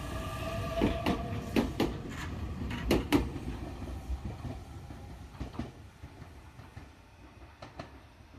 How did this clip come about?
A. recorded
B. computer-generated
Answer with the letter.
B